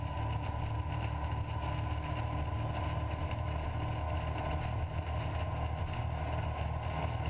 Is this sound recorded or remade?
recorded